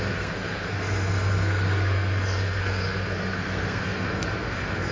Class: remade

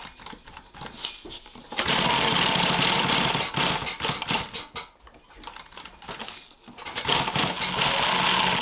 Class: recorded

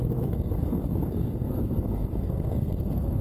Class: remade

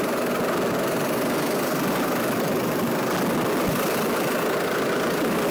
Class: recorded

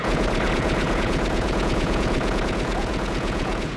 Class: remade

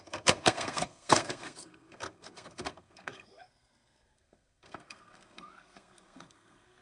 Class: remade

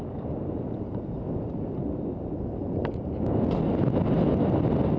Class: recorded